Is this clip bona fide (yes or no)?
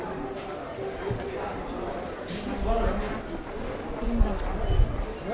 yes